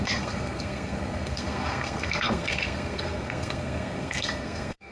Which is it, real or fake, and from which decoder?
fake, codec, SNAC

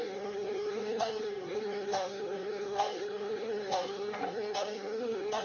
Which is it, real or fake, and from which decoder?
fake, codec, SNAC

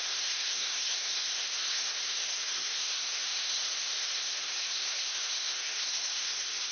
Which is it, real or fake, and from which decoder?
fake, codec, SNAC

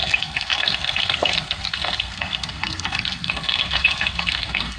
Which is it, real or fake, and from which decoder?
fake, codec, SNAC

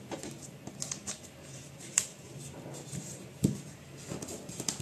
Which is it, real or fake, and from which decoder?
real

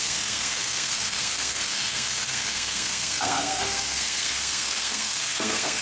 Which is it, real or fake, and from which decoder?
fake, codec, SNAC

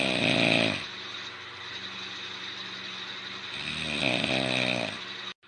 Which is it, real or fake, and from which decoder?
real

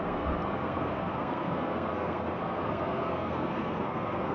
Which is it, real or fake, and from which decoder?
fake, codec, SNAC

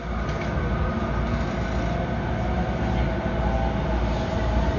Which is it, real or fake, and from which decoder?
real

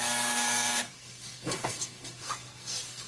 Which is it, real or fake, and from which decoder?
fake, codec, SNAC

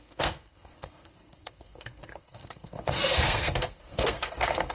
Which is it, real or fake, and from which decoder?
fake, codec, SNAC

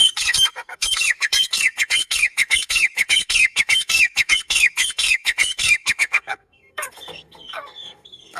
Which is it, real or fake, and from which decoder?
fake, codec, SNAC